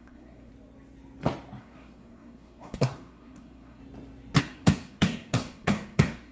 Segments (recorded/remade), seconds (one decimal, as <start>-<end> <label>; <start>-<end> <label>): 0.0-0.5 remade; 0.5-1.6 recorded; 1.6-3.8 remade; 3.8-4.4 recorded; 4.4-6.3 remade